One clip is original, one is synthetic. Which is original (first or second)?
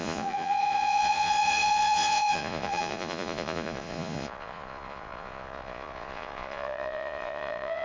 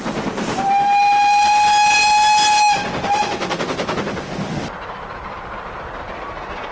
second